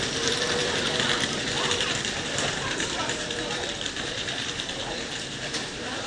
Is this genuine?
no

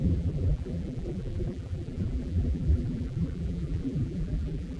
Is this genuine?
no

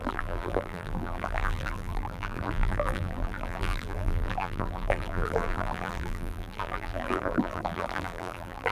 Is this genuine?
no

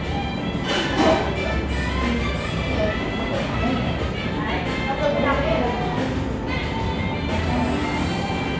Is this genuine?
yes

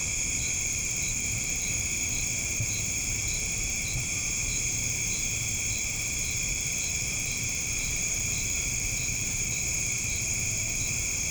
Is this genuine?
no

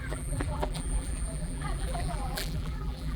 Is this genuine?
no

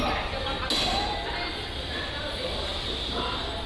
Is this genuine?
yes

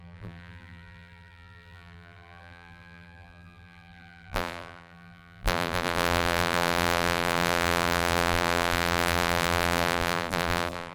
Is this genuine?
no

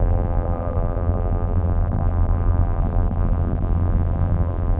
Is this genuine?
no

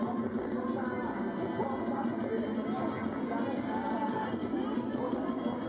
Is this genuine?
yes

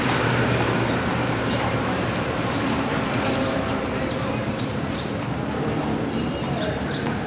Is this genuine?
no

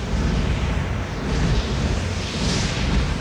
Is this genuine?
yes